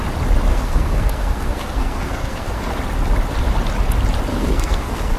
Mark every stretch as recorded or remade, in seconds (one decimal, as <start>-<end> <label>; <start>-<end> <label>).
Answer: 0.0-0.5 recorded; 0.5-2.7 remade; 2.7-4.3 recorded; 4.3-5.2 remade